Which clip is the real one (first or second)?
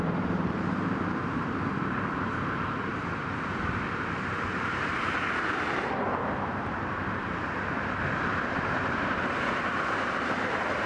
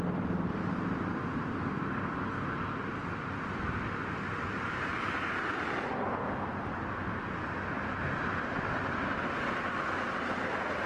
second